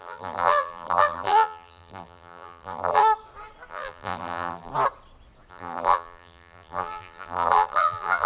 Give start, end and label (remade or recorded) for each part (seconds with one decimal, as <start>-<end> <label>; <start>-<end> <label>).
0.0-3.0 remade; 3.0-3.7 recorded; 3.7-4.7 remade; 4.7-5.5 recorded; 5.5-8.3 remade